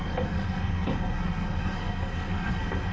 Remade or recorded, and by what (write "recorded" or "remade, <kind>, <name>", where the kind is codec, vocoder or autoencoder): remade, codec, SNAC